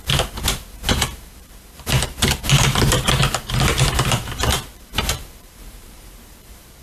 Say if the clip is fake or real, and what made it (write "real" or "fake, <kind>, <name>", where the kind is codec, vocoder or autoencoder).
fake, vocoder, BigVGAN v2